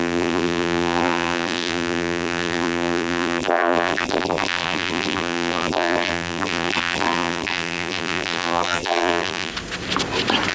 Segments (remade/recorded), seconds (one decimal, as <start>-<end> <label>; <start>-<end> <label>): 0.0-9.5 remade; 9.5-10.5 recorded